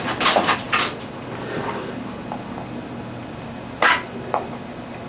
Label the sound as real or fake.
real